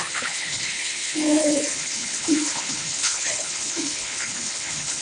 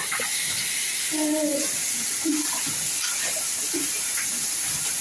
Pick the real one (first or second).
second